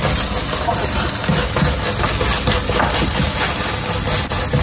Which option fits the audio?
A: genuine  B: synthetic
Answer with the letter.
A